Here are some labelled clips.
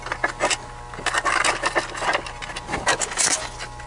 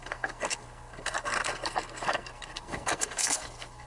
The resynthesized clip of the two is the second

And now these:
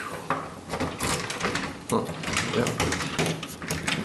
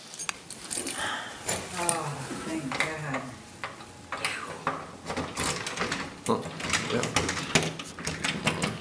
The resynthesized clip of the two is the first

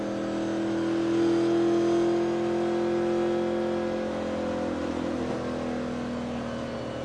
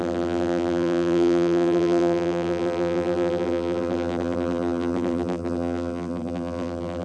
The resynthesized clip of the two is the second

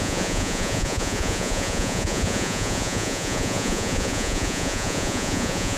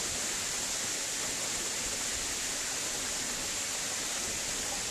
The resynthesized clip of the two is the first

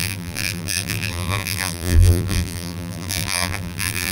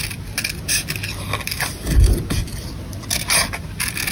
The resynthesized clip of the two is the first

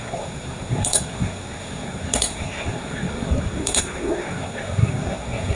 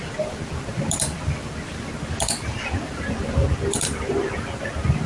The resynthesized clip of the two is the first